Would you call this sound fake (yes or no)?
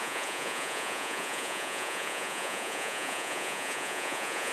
yes